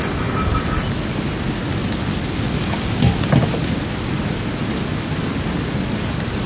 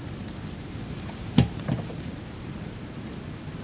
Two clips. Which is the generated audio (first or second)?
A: second